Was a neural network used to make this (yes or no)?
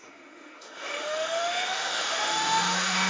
yes